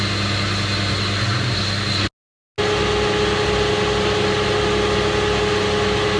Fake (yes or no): no